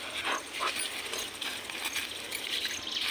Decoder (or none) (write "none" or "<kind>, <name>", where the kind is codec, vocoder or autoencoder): none